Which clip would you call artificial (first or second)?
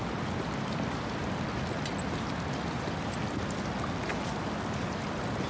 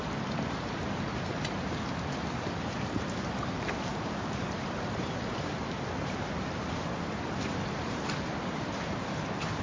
second